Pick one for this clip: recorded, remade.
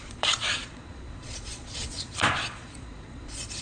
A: remade